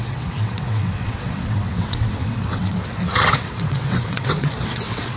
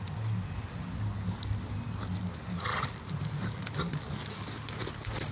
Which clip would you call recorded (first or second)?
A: second